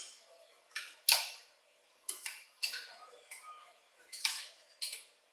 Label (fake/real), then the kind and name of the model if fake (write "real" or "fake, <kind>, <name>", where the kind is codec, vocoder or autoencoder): fake, autoencoder, DAC-VAE